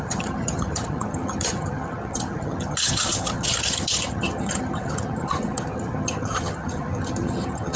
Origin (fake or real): fake